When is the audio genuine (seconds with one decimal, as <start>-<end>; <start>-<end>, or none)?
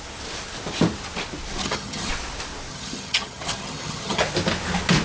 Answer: 0.0-1.6; 2.1-2.7; 4.2-5.0